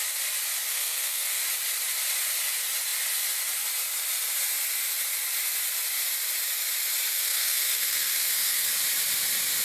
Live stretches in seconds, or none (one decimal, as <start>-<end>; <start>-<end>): 0.0-0.7; 1.4-7.1; 8.7-9.6